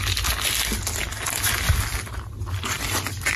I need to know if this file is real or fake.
real